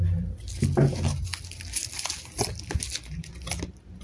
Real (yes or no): yes